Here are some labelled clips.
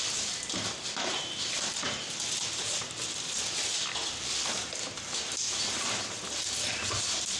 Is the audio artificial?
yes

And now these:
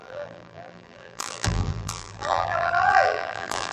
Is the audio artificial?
yes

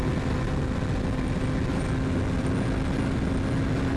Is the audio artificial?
no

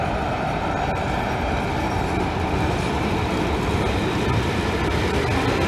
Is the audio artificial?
no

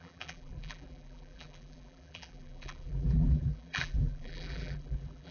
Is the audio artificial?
yes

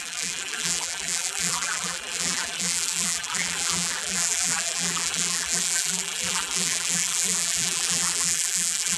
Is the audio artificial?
yes